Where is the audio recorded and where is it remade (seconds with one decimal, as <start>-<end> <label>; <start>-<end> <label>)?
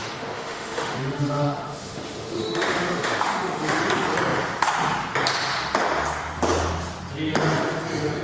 0.0-3.8 remade; 3.8-8.2 recorded